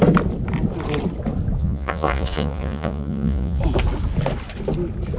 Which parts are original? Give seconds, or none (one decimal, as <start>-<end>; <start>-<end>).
0.0-1.6; 3.6-5.2